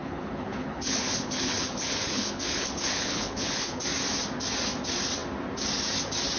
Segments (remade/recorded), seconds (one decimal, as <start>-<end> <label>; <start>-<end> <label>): 0.0-3.8 remade; 3.8-6.4 recorded